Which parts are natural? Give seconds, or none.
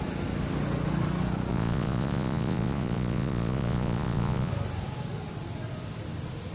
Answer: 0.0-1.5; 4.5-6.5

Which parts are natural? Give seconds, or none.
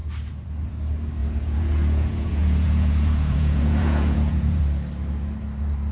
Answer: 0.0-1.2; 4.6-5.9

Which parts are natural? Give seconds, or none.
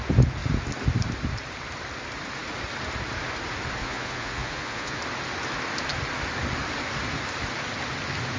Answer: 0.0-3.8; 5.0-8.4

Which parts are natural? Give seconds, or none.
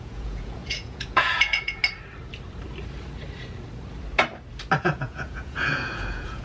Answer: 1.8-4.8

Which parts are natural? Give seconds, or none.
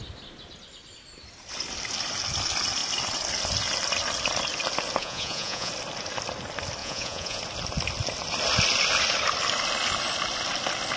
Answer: 0.0-5.0; 5.7-6.8; 7.4-11.0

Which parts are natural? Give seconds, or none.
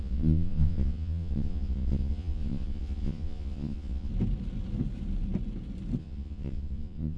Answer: 4.1-6.0